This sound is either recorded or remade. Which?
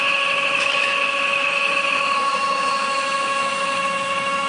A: remade